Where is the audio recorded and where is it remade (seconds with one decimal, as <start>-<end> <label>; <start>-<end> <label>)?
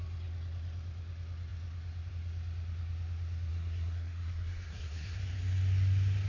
0.0-3.5 recorded; 3.5-5.2 remade; 5.2-6.3 recorded